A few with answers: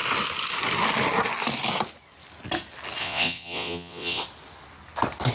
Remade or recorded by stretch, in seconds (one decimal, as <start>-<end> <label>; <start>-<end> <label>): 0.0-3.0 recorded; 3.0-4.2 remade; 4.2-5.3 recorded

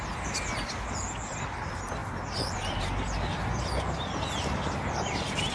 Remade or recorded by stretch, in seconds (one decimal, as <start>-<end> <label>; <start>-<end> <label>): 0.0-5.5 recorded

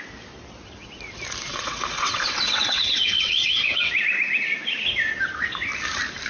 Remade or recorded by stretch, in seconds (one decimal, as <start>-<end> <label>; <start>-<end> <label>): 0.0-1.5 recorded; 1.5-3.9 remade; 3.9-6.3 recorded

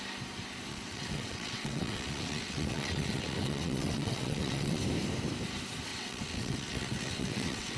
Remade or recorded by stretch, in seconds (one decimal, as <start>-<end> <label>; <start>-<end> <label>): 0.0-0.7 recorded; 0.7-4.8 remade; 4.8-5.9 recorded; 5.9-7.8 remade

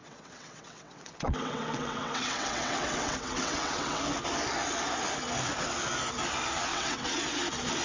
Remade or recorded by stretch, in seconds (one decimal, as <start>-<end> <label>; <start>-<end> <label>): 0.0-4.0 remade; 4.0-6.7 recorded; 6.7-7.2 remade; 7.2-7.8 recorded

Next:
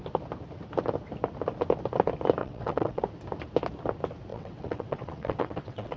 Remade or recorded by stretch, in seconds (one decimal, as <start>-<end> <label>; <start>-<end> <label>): 0.0-2.4 recorded; 2.4-3.0 remade; 3.0-4.3 recorded; 4.3-6.0 remade